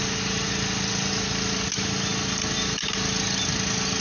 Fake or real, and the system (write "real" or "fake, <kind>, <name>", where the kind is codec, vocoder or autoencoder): real